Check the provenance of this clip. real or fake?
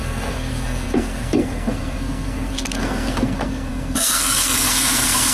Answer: fake